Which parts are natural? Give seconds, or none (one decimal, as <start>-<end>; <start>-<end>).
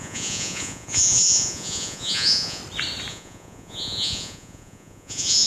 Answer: 2.6-3.1